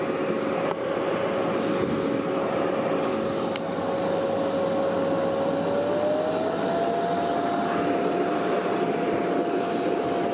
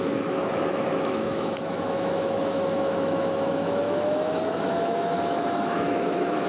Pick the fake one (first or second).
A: second